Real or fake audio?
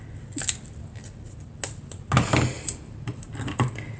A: real